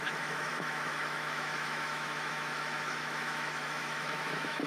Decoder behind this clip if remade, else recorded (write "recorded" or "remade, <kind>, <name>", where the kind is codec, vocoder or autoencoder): remade, autoencoder, DAC-VAE